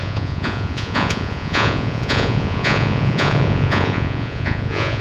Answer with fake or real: fake